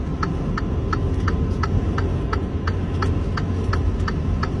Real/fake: real